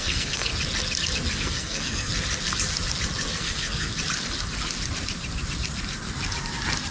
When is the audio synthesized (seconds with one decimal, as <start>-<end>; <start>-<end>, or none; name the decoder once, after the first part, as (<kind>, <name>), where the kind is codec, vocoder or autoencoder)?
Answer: 0.0-0.5 (codec, SNAC); 1.4-2.1; 3.3-3.9